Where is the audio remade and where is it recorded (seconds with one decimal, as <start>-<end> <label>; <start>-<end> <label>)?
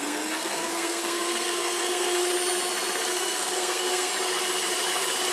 0.0-2.2 remade; 2.2-3.1 recorded; 3.1-4.1 remade; 4.1-5.3 recorded